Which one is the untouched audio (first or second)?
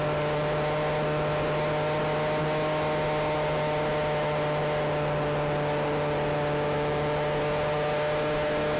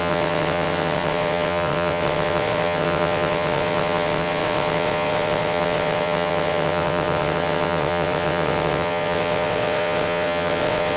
first